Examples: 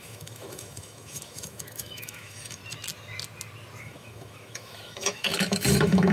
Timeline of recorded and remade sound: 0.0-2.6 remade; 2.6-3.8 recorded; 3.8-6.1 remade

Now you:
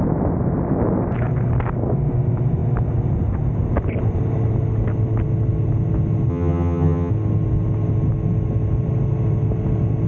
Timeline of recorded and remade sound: 0.0-6.3 recorded; 6.3-7.1 remade; 7.1-10.1 recorded